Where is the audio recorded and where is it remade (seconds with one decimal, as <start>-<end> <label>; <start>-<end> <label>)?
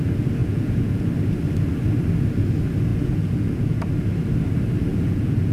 0.0-0.4 recorded; 0.4-1.1 remade; 1.1-2.9 recorded; 2.9-3.8 remade; 3.8-4.9 recorded; 4.9-5.5 remade